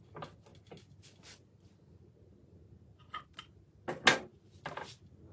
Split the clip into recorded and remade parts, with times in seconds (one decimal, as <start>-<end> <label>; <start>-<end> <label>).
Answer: 0.0-5.3 recorded